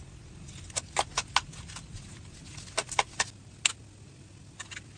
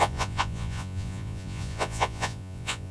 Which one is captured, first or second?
first